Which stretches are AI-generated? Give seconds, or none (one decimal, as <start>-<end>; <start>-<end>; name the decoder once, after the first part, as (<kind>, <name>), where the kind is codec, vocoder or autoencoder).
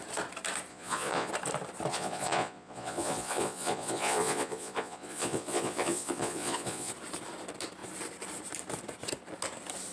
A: 0.7-1.3 (vocoder, Vocos); 1.9-6.9